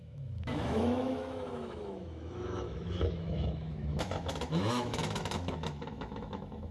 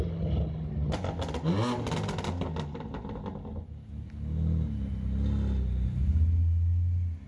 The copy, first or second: first